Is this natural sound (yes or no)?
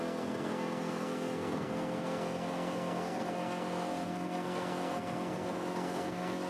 no